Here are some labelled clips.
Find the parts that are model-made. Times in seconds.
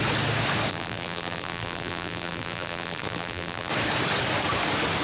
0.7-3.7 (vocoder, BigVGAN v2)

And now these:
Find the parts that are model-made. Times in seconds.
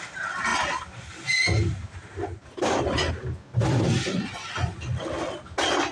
none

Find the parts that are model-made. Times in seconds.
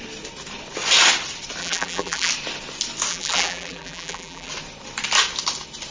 1.6-2.3 (vocoder, BigVGAN v2); 3.1-4.5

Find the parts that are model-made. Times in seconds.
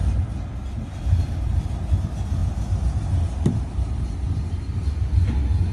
0.0-1.2 (vocoder, BigVGAN v2)